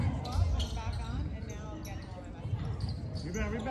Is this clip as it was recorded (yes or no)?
yes